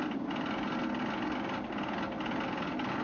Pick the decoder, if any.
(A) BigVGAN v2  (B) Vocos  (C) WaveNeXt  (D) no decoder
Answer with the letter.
D